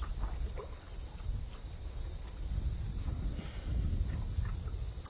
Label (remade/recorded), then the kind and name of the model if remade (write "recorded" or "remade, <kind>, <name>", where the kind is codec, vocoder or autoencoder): recorded